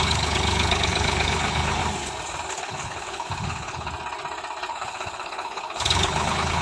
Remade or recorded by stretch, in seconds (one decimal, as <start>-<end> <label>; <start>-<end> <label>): 0.0-1.8 remade; 1.8-2.5 recorded; 2.5-3.9 remade; 3.9-4.7 recorded; 4.7-6.6 remade